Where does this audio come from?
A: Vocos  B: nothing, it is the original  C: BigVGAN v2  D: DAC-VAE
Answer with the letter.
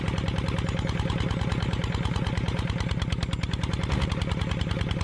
B